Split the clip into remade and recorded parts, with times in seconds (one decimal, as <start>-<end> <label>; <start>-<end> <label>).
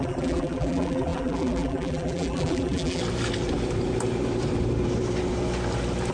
0.0-3.0 remade; 3.0-6.1 recorded